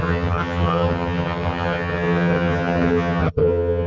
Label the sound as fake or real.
fake